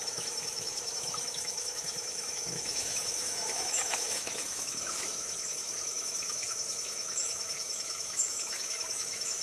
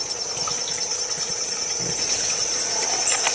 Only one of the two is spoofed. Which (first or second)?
first